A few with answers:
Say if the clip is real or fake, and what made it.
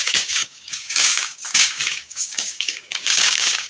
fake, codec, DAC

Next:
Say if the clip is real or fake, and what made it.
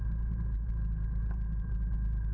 real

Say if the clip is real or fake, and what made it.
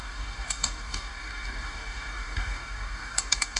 fake, codec, DAC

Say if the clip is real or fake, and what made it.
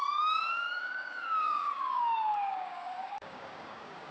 fake, codec, DAC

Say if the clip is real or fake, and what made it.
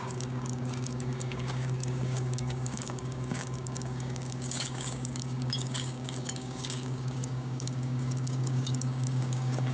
fake, codec, DAC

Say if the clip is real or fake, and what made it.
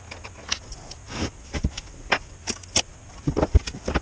real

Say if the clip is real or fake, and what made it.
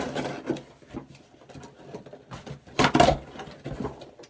real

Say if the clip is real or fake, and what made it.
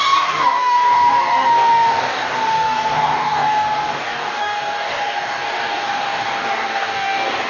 fake, codec, DAC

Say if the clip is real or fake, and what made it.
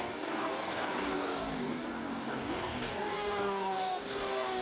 fake, codec, DAC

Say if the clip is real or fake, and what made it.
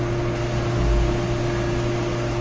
real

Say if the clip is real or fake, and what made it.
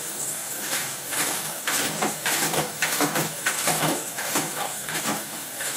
fake, codec, DAC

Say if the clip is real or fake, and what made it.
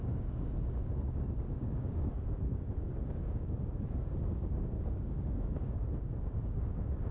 fake, codec, DAC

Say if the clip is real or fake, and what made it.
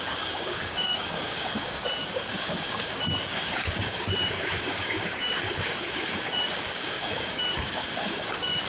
fake, codec, DAC